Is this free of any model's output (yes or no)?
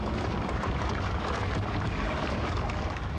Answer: no